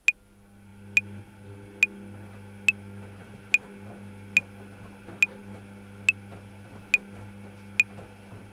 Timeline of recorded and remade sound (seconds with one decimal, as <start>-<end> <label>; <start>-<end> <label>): 0.0-8.5 recorded